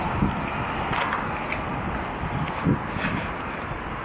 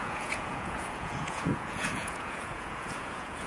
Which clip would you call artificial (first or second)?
second